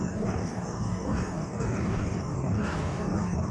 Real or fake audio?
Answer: fake